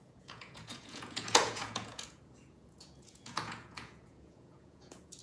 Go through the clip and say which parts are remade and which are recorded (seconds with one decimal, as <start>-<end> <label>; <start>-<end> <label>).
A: 0.0-5.2 remade